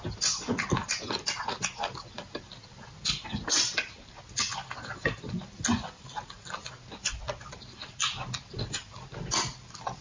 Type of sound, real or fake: real